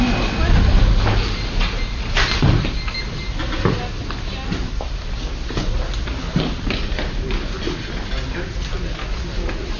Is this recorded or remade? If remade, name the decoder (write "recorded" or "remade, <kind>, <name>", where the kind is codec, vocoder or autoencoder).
recorded